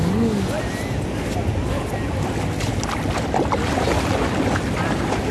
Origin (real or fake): real